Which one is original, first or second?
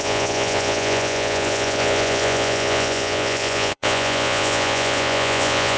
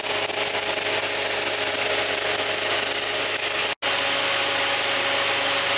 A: second